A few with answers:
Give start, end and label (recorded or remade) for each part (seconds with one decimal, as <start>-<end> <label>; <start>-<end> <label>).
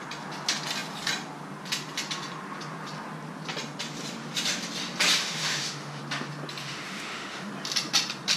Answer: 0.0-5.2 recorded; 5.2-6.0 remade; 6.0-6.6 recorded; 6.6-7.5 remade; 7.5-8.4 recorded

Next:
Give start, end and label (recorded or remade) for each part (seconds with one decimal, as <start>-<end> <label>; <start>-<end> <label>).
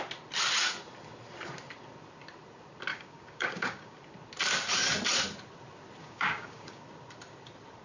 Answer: 0.0-2.9 recorded; 2.9-4.0 remade; 4.0-6.0 recorded; 6.0-6.8 remade; 6.8-7.8 recorded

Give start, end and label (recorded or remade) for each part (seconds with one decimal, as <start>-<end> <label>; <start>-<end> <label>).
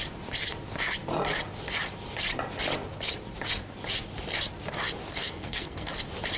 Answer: 0.0-5.2 recorded; 5.2-5.9 remade; 5.9-6.4 recorded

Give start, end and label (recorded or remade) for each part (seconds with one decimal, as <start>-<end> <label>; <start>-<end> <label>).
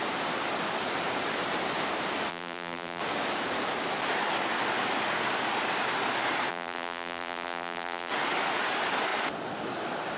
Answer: 0.0-2.3 recorded; 2.3-3.0 remade; 3.0-6.5 recorded; 6.5-8.1 remade; 8.1-10.2 recorded